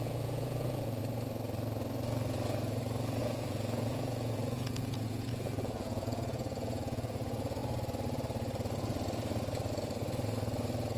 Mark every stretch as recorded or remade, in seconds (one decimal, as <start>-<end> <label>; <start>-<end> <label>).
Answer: 0.0-1.0 remade; 1.0-3.2 recorded; 3.2-7.6 remade; 7.6-11.0 recorded